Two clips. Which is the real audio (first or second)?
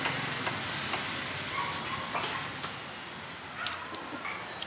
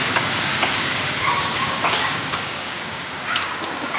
first